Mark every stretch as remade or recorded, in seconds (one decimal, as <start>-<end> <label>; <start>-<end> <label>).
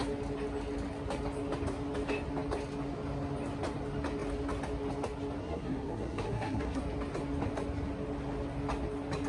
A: 0.0-5.4 recorded; 5.4-6.8 remade; 6.8-9.3 recorded